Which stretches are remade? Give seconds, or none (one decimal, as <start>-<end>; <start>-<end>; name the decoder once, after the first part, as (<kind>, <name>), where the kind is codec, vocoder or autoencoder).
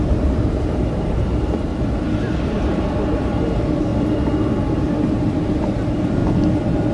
0.0-1.7 (vocoder, BigVGAN v2); 2.5-3.9; 4.6-6.2